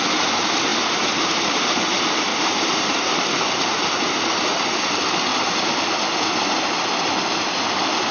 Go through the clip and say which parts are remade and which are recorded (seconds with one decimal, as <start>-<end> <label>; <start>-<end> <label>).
0.0-0.7 recorded; 0.7-1.6 remade; 1.6-2.3 recorded; 2.3-3.4 remade; 3.4-5.3 recorded; 5.3-5.9 remade; 5.9-8.1 recorded